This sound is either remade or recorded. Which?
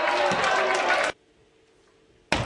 recorded